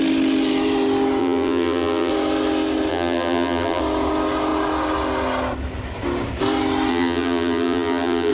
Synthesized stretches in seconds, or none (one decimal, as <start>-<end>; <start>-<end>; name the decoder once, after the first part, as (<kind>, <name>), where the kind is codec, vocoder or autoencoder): 1.2-2.1 (vocoder, BigVGAN v2); 2.9-3.8; 6.9-8.3